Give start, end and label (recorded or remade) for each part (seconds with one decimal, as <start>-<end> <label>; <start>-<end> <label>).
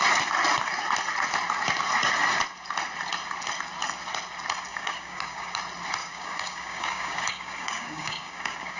0.0-4.7 recorded; 4.7-5.6 remade; 5.6-6.0 recorded; 6.0-8.8 remade